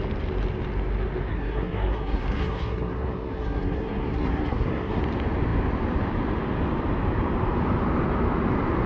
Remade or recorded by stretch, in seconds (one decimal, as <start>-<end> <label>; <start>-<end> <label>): 0.0-1.3 recorded; 1.3-5.0 remade; 5.0-8.9 recorded